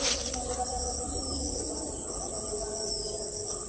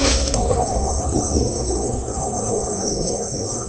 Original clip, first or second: first